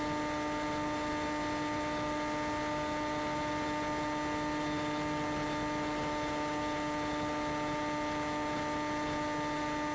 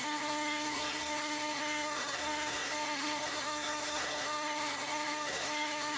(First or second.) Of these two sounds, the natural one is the first